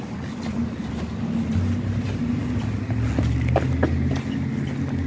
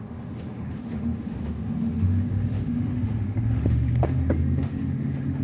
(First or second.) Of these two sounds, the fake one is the second